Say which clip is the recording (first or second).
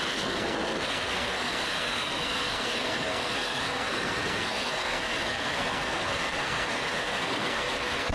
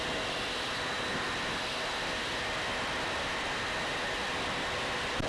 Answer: second